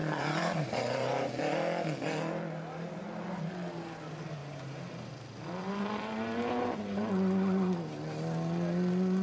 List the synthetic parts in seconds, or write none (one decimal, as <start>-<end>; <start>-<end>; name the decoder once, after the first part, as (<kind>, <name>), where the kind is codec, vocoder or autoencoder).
0.0-1.3 (vocoder, BigVGAN v2); 4.4-7.1